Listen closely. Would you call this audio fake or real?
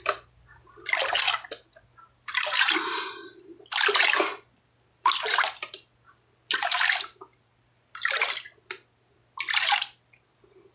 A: real